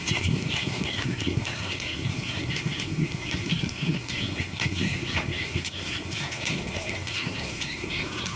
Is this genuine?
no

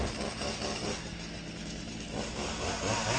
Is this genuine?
yes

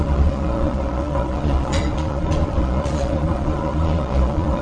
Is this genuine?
no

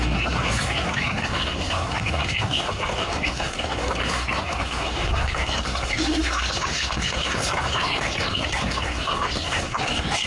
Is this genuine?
no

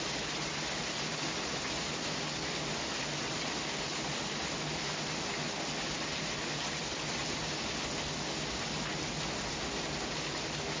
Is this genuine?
yes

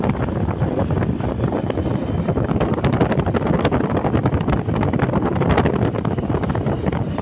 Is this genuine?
yes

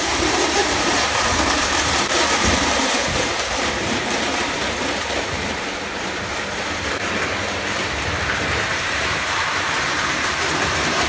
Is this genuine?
no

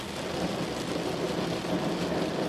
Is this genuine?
yes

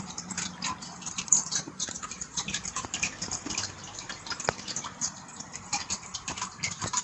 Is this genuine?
no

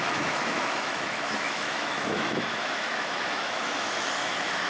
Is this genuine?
no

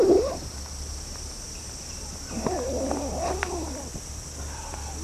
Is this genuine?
yes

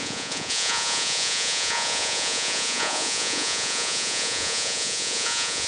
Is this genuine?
no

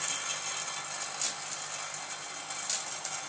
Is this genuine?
yes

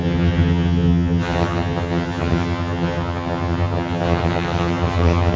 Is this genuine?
no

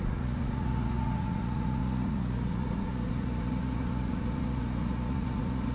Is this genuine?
no